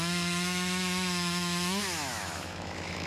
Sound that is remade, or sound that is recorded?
remade